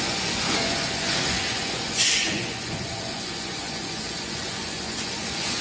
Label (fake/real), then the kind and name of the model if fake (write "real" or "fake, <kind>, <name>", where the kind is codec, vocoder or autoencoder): fake, vocoder, Vocos